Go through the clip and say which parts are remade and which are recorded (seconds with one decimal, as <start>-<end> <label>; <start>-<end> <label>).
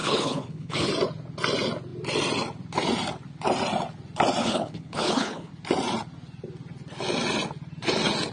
0.0-0.9 remade; 0.9-4.4 recorded; 4.4-5.5 remade; 5.5-8.3 recorded